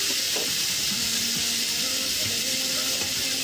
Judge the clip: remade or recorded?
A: recorded